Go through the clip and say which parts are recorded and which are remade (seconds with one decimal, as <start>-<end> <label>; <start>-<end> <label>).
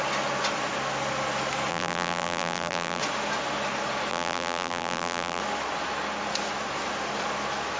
0.0-1.7 recorded; 1.7-3.0 remade; 3.0-4.1 recorded; 4.1-5.4 remade; 5.4-7.8 recorded